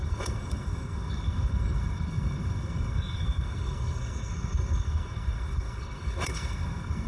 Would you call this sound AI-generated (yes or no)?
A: yes